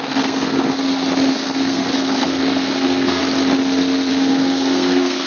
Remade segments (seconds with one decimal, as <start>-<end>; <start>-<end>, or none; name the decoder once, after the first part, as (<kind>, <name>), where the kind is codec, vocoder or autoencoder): 0.0-0.8 (codec, SNAC); 1.3-3.2; 4.1-5.3